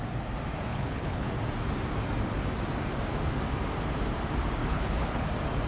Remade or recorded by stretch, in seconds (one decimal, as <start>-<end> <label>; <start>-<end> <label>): 0.0-0.7 recorded; 0.7-1.3 remade; 1.3-4.6 recorded; 4.6-5.3 remade; 5.3-5.7 recorded